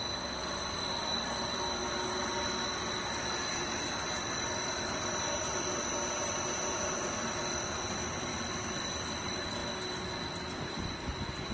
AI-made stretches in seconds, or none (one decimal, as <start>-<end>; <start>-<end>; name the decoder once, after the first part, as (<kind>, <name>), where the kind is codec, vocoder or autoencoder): 0.0-1.8 (vocoder, BigVGAN v2); 3.9-9.6; 10.8-11.5